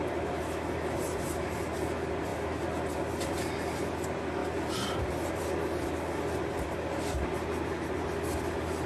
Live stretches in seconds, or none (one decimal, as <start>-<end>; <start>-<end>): 0.0-8.9